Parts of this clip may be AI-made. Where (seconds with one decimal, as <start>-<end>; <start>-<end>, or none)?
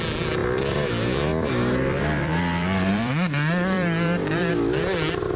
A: 0.4-0.9; 1.3-4.5